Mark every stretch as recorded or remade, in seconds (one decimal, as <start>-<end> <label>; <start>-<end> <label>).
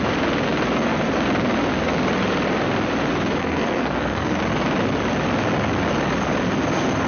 0.0-3.4 recorded; 3.4-4.4 remade; 4.4-7.1 recorded